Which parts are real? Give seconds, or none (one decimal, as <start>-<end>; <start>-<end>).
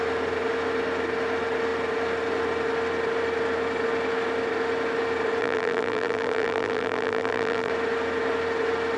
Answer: 0.0-5.4; 7.7-9.0